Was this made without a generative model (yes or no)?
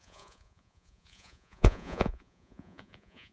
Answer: no